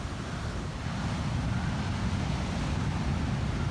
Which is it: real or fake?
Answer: real